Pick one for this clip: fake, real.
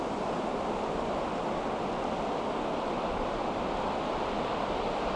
real